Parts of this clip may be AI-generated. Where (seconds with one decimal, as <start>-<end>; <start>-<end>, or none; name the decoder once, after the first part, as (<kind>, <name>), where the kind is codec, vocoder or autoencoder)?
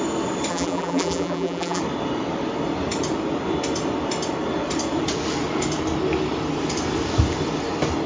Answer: 0.5-1.8 (vocoder, BigVGAN v2)